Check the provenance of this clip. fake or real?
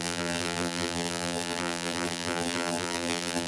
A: fake